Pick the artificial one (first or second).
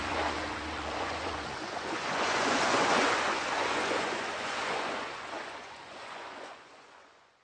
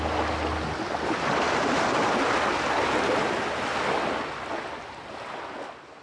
first